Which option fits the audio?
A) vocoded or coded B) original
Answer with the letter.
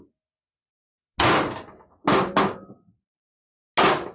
B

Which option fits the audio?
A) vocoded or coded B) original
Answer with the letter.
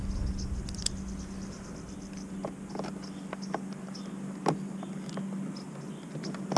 B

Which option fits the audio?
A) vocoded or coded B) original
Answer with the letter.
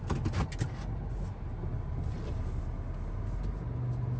B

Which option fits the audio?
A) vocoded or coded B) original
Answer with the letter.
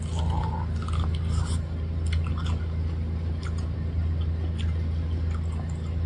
B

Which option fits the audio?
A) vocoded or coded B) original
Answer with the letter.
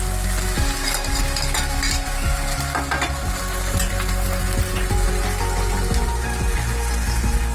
B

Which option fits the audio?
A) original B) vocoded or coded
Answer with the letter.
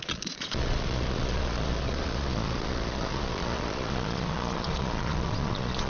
B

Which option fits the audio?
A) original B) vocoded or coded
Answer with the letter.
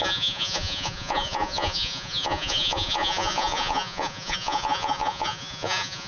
B